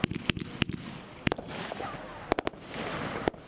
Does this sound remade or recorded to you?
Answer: recorded